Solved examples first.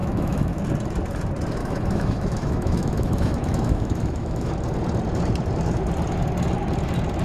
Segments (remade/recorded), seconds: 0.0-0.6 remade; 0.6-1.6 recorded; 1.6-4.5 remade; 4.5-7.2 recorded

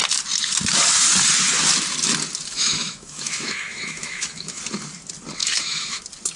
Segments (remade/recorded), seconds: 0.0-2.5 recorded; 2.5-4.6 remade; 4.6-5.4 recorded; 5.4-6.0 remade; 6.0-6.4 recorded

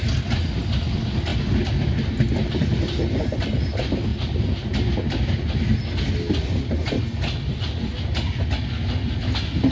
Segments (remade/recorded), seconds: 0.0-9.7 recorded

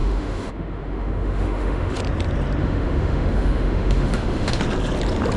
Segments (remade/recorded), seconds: 0.0-2.0 remade; 2.0-2.6 recorded; 2.6-4.6 remade; 4.6-5.4 recorded

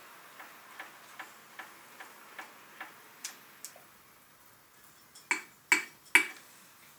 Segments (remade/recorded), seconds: 0.0-7.0 recorded

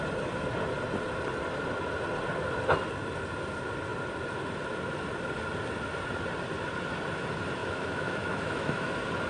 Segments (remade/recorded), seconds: 0.0-7.6 recorded; 7.6-8.9 remade; 8.9-9.3 recorded

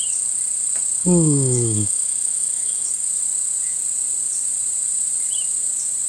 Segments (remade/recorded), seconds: 0.0-1.0 recorded; 1.0-2.9 remade; 2.9-6.1 recorded